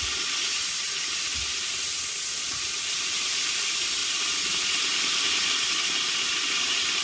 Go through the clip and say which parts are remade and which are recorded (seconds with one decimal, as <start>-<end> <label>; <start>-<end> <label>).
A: 0.0-1.3 remade; 1.3-2.3 recorded; 2.3-7.0 remade